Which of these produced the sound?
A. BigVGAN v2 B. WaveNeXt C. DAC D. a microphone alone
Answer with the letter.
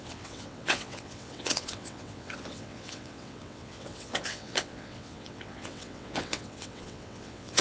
B